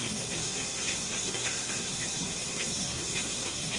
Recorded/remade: remade